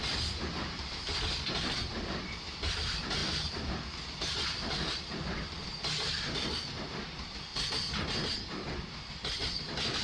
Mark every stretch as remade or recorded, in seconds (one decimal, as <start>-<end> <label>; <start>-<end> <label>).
0.0-7.5 remade; 7.5-9.1 recorded; 9.1-10.0 remade